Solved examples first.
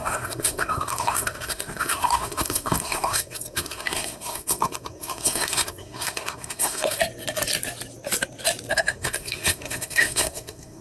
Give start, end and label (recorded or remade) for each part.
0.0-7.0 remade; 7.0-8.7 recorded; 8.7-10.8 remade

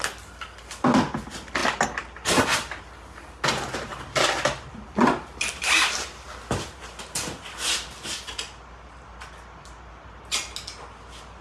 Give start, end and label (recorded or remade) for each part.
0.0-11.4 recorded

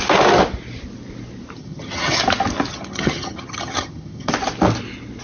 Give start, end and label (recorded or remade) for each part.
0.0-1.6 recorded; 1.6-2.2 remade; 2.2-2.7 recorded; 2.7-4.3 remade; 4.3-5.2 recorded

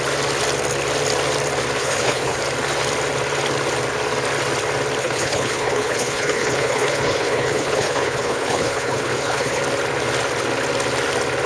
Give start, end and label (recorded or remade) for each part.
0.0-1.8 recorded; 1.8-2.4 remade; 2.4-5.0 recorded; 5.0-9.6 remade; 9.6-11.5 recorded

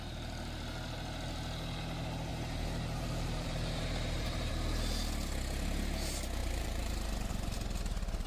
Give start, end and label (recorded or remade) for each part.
0.0-2.3 recorded; 2.3-4.5 remade; 4.5-6.4 recorded; 6.4-7.3 remade; 7.3-8.3 recorded

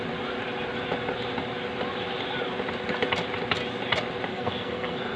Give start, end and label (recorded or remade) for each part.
0.0-4.3 recorded; 4.3-5.2 remade